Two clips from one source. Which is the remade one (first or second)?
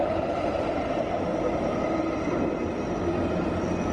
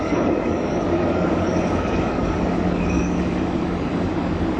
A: second